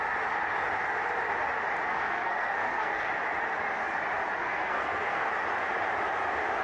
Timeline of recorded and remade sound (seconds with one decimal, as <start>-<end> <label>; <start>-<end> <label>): 0.0-1.9 recorded; 1.9-3.1 remade; 3.1-4.4 recorded; 4.4-5.3 remade; 5.3-6.6 recorded